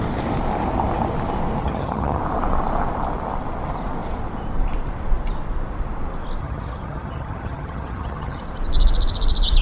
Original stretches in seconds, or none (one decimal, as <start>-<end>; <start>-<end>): 0.0-1.6; 2.2-6.4; 8.4-9.6